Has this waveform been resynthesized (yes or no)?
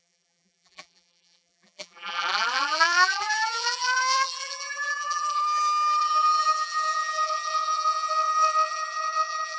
yes